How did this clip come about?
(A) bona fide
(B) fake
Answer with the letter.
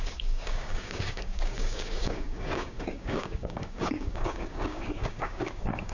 B